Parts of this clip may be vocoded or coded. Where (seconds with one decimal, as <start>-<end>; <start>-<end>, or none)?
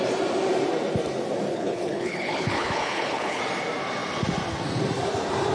1.5-3.4